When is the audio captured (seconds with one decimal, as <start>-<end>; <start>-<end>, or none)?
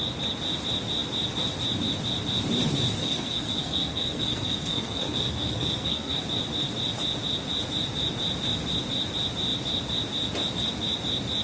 0.0-3.0; 6.2-11.4